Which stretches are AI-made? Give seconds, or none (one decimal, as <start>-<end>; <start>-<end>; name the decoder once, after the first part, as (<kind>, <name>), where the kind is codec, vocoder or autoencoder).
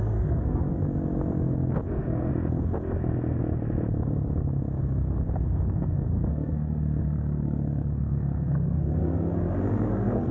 0.0-0.8 (codec, SNAC); 1.9-2.3; 5.3-10.3